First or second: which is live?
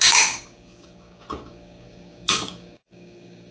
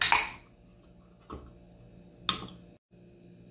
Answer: second